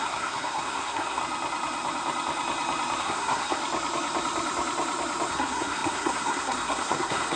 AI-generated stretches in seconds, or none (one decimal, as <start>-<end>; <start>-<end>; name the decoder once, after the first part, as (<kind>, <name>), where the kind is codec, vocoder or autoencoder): 0.0-1.2 (codec, SNAC); 3.0-3.6; 5.3-7.4

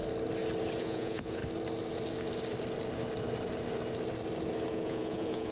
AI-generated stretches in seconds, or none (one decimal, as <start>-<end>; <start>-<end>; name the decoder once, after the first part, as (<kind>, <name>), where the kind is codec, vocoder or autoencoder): 0.8-1.4 (vocoder, Vocos); 4.7-5.5